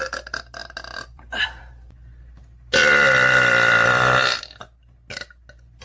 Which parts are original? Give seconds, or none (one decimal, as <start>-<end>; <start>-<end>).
0.0-0.6; 1.6-2.8; 4.4-5.8